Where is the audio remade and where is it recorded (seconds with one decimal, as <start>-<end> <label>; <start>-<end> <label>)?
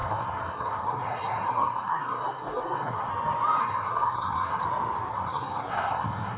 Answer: 0.0-3.1 remade; 3.1-3.6 recorded; 3.6-4.6 remade; 4.6-5.1 recorded; 5.1-6.4 remade